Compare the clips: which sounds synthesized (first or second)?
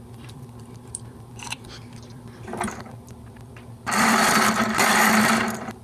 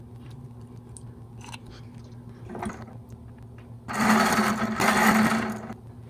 first